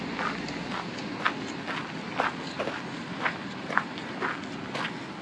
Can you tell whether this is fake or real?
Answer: real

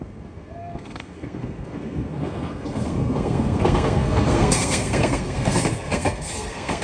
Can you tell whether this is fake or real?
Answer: fake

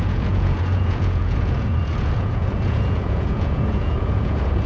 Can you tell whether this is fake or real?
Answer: fake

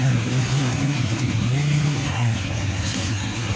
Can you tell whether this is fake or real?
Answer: fake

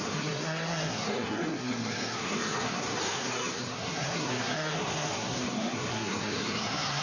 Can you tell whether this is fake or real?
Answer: fake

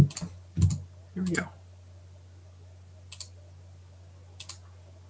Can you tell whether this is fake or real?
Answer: real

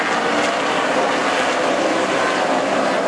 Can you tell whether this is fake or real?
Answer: real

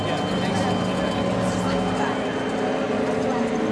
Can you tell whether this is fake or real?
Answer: real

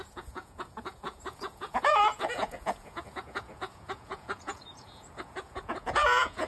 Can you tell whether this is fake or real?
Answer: fake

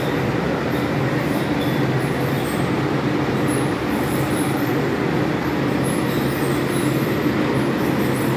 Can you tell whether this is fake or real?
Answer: real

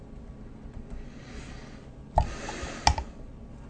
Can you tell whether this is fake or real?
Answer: real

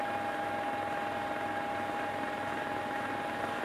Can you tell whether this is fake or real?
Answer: real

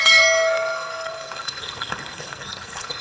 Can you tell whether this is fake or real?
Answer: fake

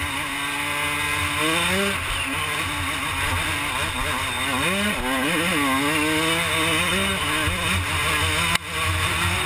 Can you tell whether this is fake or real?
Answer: real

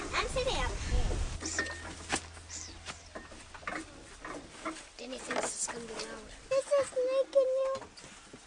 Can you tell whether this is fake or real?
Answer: real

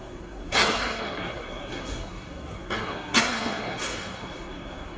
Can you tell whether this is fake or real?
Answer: fake